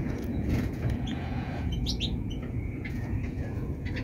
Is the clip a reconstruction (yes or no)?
yes